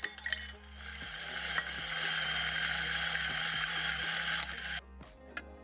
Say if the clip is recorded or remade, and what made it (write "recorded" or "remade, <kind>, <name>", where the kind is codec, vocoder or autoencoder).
recorded